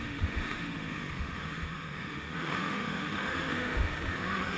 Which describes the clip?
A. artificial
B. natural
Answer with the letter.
A